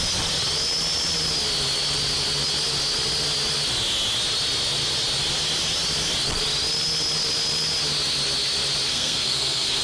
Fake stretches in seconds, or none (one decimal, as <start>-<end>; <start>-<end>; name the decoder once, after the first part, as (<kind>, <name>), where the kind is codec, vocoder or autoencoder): 8.9-9.8 (codec, SNAC)